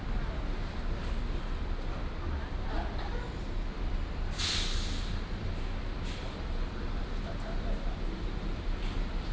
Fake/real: fake